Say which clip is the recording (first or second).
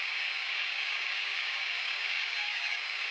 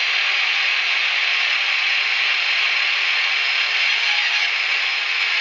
second